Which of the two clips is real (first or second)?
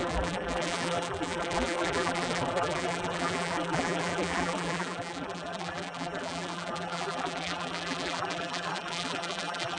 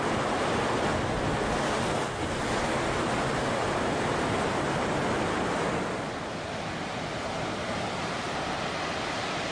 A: second